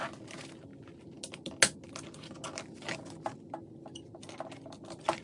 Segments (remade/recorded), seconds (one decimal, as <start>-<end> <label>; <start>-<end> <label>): 0.0-5.2 recorded